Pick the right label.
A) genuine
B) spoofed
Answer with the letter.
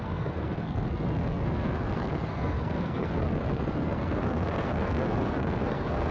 B